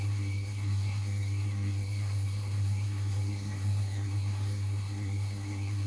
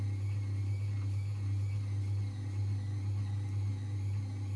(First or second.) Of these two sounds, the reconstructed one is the first